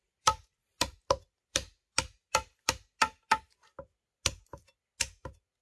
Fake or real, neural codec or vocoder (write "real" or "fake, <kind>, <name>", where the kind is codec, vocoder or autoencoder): real